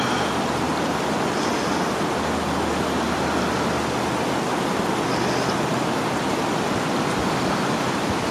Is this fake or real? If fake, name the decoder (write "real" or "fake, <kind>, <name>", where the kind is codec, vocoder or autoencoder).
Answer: real